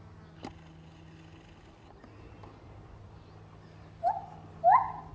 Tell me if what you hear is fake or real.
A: real